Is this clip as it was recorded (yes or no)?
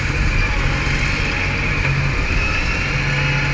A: yes